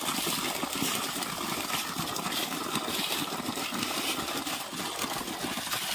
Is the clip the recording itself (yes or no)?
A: yes